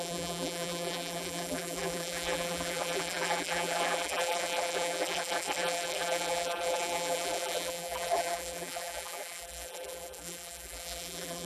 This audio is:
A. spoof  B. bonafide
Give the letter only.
A